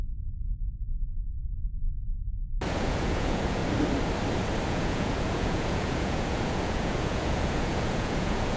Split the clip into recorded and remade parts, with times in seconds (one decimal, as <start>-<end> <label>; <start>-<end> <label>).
0.0-1.1 remade; 1.1-2.7 recorded; 2.7-3.6 remade; 3.6-4.7 recorded; 4.7-8.6 remade